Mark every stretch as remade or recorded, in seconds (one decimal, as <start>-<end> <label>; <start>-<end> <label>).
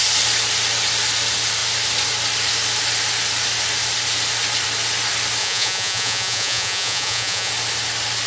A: 0.0-5.4 recorded; 5.4-7.5 remade; 7.5-8.3 recorded